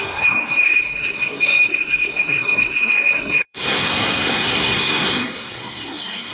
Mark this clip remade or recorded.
remade